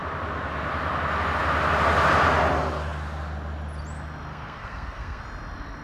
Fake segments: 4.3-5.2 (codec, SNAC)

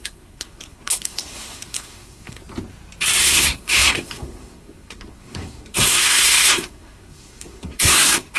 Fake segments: 0.0-2.4 (codec, SNAC); 3.2-8.4

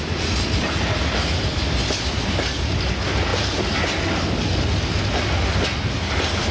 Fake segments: none